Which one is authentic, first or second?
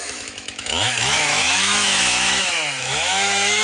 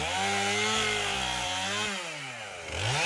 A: second